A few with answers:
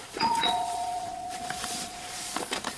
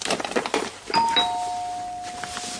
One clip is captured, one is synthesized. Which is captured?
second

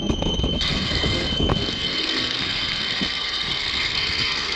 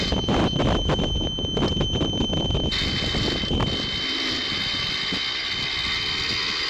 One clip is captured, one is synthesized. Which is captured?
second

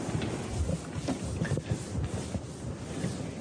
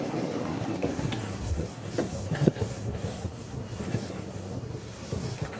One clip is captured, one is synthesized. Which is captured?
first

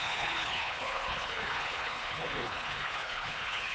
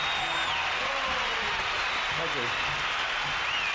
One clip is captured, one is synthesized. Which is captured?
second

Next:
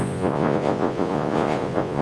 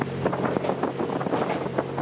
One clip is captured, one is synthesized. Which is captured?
second